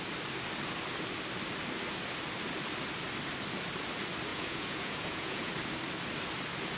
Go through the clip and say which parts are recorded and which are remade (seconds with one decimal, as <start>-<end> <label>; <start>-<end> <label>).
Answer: 0.0-4.3 recorded; 4.3-5.5 remade; 5.5-6.8 recorded